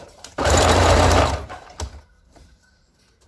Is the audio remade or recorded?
remade